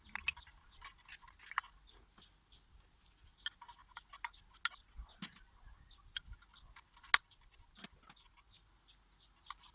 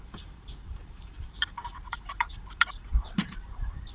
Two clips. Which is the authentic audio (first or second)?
first